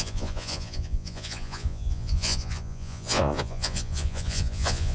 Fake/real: fake